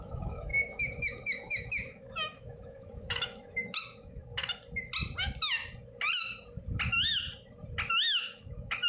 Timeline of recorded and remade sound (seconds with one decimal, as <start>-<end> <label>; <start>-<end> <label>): 0.0-4.2 remade; 4.2-7.9 recorded; 7.9-8.9 remade